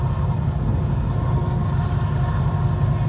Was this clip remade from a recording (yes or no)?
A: no